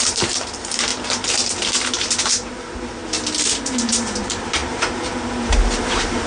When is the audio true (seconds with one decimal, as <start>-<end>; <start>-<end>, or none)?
0.9-2.3; 3.0-3.9